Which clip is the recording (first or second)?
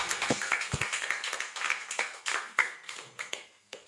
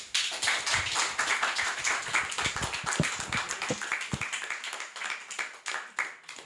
second